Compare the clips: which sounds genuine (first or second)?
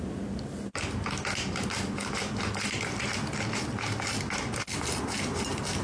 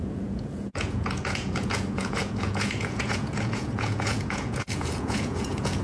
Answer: first